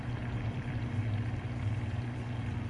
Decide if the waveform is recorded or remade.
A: remade